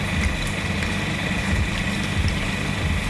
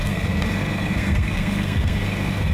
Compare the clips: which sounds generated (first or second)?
second